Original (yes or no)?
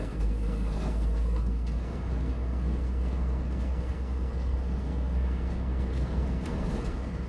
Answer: no